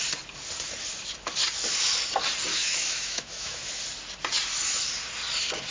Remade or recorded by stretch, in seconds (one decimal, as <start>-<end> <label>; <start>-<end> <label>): 0.0-2.5 recorded; 2.5-3.8 remade; 3.8-5.7 recorded